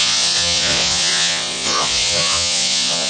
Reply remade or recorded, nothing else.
remade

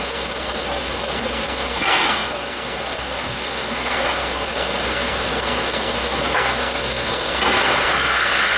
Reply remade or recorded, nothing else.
remade